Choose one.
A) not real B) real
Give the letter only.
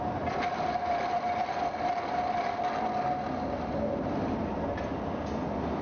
B